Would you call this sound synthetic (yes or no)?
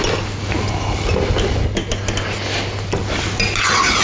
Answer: no